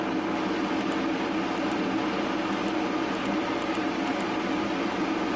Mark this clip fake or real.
real